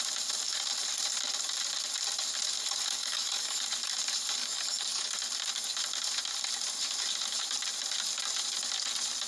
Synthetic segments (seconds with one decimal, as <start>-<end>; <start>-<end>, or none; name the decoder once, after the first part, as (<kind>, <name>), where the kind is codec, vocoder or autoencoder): 3.0-3.6 (codec, DAC); 4.4-5.1